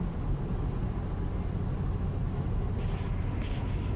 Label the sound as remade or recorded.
recorded